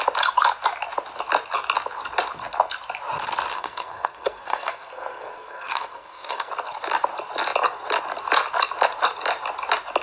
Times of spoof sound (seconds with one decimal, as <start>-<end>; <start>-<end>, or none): 3.5-6.5